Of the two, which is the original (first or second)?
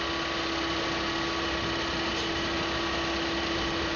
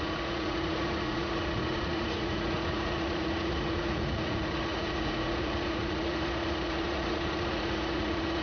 first